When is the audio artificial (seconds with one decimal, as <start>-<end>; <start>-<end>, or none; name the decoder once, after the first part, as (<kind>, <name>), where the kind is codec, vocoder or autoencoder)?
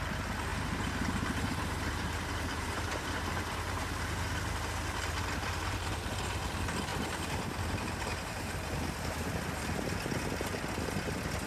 0.5-4.2 (vocoder, BigVGAN v2); 6.9-8.5